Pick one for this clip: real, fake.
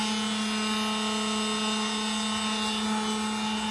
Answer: real